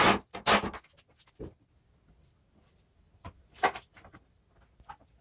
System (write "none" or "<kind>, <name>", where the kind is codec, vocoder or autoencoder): none